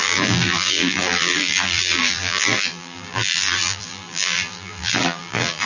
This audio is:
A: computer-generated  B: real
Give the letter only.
A